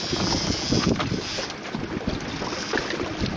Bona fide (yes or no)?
yes